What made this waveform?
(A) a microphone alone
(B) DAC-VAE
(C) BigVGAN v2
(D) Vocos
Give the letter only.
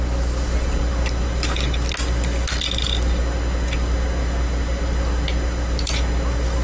A